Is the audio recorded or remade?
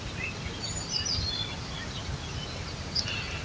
recorded